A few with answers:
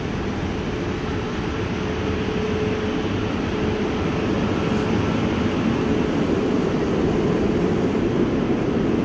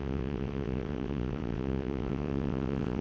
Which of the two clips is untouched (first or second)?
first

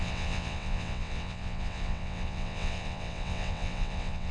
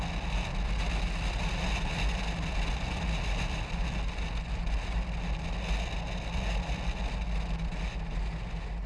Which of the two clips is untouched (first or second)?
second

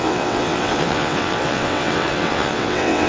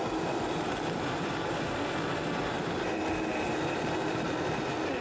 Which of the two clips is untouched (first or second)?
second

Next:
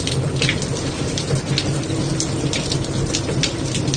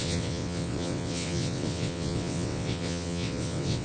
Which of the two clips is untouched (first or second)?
first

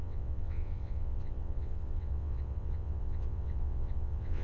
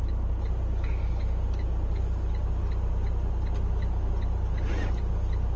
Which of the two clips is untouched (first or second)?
second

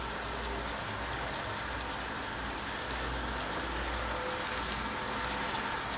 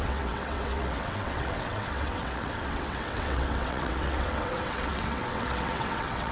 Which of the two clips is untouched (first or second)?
first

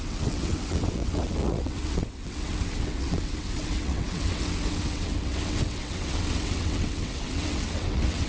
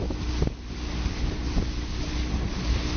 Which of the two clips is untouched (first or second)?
second